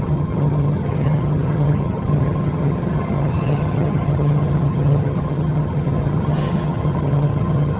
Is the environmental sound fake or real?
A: fake